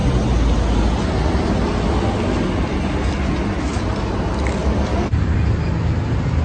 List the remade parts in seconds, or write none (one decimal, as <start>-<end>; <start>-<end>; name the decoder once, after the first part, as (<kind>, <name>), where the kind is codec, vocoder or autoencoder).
4.6-5.7 (vocoder, BigVGAN v2)